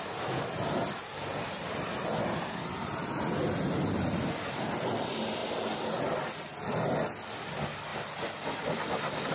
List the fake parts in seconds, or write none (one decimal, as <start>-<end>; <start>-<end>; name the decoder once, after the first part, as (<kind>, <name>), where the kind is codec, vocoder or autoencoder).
none